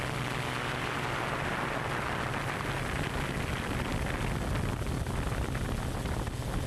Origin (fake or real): real